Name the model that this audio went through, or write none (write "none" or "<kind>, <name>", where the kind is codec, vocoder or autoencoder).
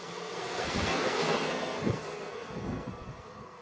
codec, SNAC